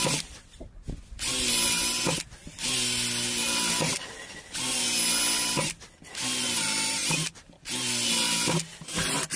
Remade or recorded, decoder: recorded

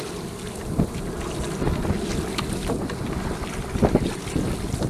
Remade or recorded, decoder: recorded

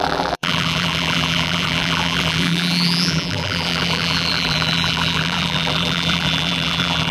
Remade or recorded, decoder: remade, vocoder, BigVGAN v2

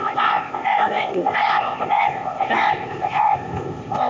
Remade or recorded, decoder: remade, codec, ZipCodec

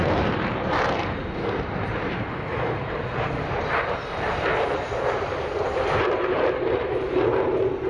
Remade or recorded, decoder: remade, vocoder, BigVGAN v2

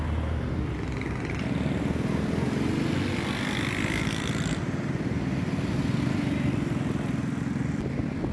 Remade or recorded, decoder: recorded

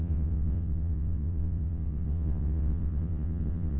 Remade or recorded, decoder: remade, vocoder, WaveNeXt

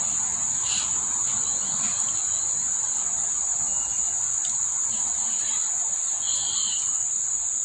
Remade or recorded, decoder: recorded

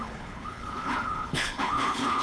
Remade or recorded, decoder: remade, codec, HILCodec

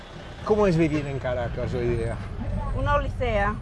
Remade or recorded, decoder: recorded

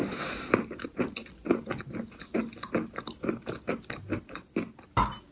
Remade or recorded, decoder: recorded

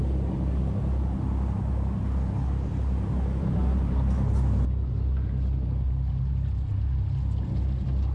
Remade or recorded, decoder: recorded